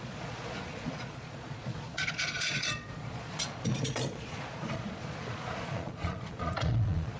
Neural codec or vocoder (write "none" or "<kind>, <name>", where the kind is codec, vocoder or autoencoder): vocoder, Vocos